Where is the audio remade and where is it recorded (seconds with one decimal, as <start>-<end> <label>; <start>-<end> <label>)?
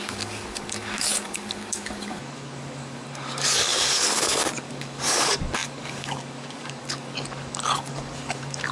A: 0.0-8.7 remade